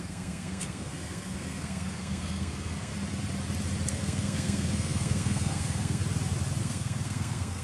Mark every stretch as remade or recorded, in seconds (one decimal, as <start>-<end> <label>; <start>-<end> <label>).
0.0-2.9 remade; 2.9-3.9 recorded; 3.9-6.0 remade; 6.0-6.6 recorded; 6.6-7.6 remade